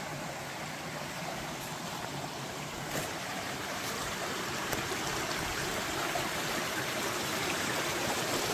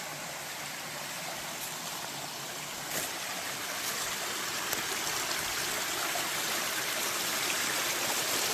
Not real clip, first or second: first